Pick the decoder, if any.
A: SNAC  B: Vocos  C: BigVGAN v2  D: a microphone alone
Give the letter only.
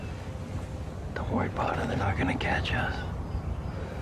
D